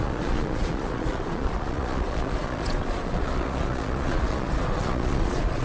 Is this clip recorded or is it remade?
remade